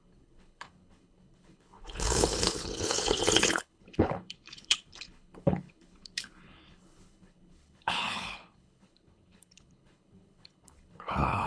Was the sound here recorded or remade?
remade